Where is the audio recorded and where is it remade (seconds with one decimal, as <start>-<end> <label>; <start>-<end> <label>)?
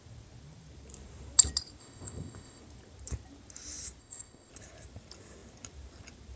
0.0-1.8 recorded; 1.8-2.6 remade; 2.6-4.0 recorded; 4.0-4.5 remade; 4.5-6.4 recorded